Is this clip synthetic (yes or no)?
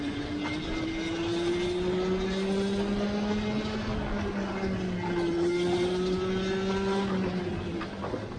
no